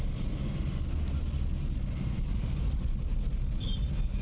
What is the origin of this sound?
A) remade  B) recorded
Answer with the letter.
B